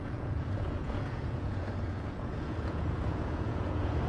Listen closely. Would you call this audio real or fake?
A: fake